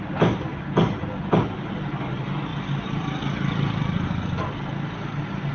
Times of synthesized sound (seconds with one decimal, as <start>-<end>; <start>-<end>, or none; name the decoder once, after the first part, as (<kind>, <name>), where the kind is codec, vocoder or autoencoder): none

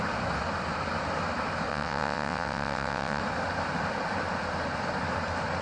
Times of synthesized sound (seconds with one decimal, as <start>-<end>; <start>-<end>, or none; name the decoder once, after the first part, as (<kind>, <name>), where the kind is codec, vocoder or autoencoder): 1.7-3.2 (vocoder, WaveNeXt)

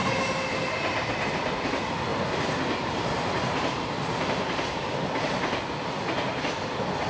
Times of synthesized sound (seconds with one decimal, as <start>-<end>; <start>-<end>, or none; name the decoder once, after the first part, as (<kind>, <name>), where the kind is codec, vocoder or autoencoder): none

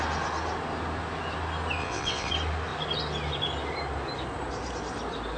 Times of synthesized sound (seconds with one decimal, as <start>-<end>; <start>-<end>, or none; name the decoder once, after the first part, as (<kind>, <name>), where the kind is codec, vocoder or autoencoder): 1.8-2.3 (vocoder, WaveNeXt)

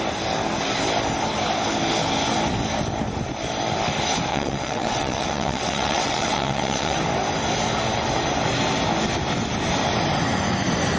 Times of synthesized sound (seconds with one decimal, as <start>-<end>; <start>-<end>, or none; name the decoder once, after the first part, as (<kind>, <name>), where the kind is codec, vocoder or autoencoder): 4.3-7.0 (vocoder, WaveNeXt)

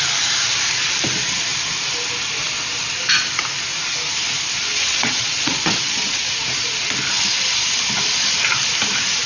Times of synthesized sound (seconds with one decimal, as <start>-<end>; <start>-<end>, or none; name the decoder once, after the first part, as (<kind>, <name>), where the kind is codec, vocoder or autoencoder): 4.7-6.3 (vocoder, WaveNeXt)

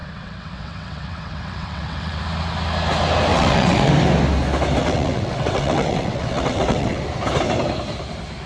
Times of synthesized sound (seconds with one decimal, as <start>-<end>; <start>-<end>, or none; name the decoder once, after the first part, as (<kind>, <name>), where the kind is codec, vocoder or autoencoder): 0.0-2.2 (vocoder, WaveNeXt); 3.3-3.9; 4.8-7.0

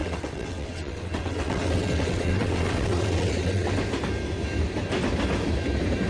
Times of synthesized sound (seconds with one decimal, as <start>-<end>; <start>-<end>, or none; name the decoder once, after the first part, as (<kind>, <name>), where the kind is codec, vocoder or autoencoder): 0.0-3.7 (vocoder, WaveNeXt)